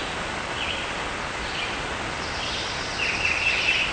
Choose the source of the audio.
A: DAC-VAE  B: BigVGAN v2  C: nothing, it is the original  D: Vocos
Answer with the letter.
C